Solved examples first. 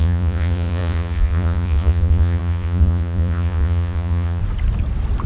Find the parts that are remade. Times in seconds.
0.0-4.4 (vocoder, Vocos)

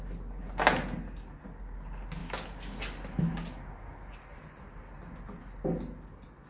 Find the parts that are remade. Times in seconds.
none

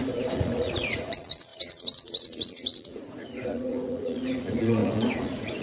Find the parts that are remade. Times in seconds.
0.0-5.6 (vocoder, Vocos)

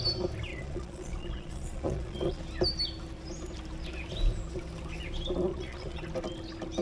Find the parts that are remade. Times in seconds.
0.5-2.4 (vocoder, Vocos); 5.5-6.0